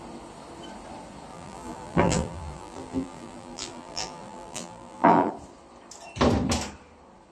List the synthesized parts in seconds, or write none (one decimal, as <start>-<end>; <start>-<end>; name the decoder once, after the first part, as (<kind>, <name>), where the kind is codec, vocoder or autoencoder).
1.3-5.3 (vocoder, BigVGAN v2)